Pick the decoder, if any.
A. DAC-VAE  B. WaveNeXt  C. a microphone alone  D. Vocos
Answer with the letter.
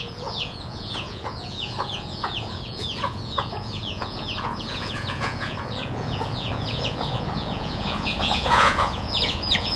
D